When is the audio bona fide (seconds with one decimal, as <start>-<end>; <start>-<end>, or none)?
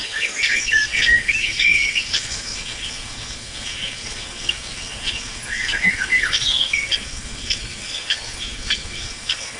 none